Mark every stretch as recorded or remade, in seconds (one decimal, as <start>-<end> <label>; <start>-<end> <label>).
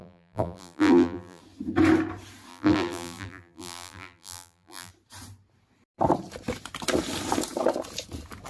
0.0-1.4 remade; 1.4-2.5 recorded; 2.5-4.9 remade; 4.9-8.5 recorded